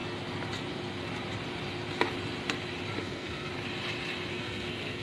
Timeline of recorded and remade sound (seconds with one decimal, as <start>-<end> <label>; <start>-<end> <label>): 0.0-3.0 recorded; 3.0-3.5 remade; 3.5-4.3 recorded; 4.3-5.0 remade